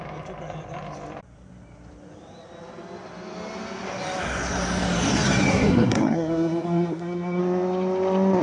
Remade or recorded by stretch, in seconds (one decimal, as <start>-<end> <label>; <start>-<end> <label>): 0.0-5.5 recorded; 5.5-7.4 remade; 7.4-8.4 recorded